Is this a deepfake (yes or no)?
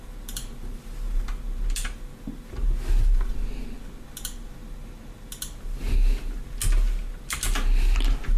no